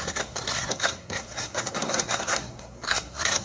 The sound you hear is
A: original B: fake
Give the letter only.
B